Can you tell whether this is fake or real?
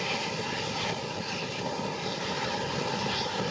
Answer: real